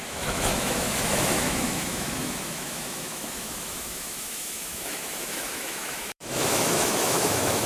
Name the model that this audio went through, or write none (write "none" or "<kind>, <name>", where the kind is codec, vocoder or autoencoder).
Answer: autoencoder, DAC-VAE